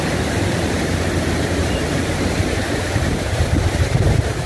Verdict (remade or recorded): remade